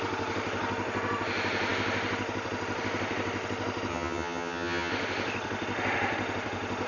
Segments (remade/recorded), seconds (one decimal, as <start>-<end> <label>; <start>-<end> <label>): 0.0-3.9 recorded; 3.9-4.9 remade; 4.9-6.9 recorded